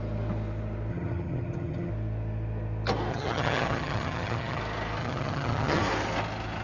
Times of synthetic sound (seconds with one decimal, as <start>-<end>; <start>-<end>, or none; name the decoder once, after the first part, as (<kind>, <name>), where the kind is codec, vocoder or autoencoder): 0.9-1.9 (vocoder, HiFi-GAN); 3.1-4.6; 5.0-5.8

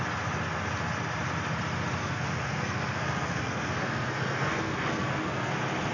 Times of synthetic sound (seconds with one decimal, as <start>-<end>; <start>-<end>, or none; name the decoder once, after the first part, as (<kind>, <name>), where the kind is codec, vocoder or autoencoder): 2.0-5.5 (codec, SNAC)

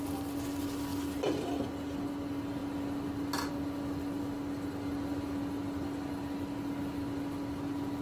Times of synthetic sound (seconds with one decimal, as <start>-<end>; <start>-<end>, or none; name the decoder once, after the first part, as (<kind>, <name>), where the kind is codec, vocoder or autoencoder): none

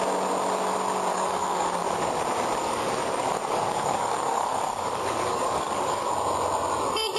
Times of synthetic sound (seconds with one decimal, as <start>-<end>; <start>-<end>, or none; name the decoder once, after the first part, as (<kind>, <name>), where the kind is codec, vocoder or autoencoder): 1.1-2.2 (codec, DAC); 2.6-6.1